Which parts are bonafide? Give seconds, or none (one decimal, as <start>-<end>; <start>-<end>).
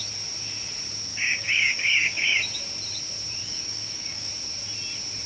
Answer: 0.0-1.1; 2.4-3.4; 4.3-5.3